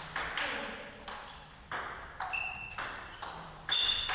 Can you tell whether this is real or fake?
real